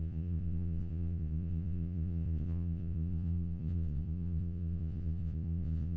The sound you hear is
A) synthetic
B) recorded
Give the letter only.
A